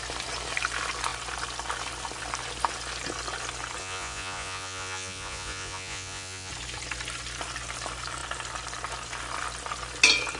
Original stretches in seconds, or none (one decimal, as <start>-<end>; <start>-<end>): 0.0-3.8; 6.5-10.4